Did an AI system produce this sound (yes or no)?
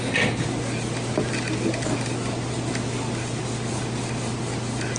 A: no